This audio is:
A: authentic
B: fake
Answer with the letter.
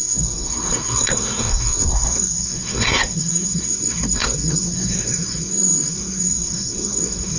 B